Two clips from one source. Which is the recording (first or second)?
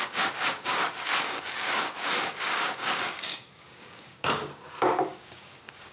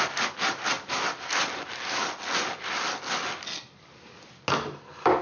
second